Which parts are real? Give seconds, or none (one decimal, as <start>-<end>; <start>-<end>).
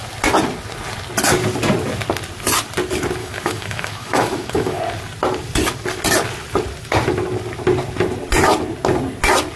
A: 0.0-3.2; 4.8-9.6